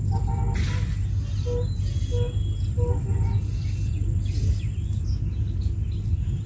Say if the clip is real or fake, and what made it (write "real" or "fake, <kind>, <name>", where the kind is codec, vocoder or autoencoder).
real